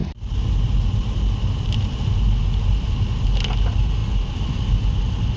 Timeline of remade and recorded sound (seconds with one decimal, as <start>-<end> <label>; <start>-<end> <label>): 0.0-5.4 recorded